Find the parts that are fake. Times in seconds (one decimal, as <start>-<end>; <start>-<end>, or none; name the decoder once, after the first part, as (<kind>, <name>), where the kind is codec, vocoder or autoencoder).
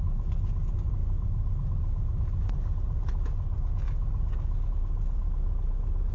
none